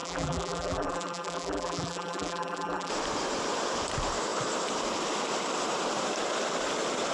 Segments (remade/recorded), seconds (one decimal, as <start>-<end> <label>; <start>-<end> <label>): 0.0-2.9 remade; 2.9-7.1 recorded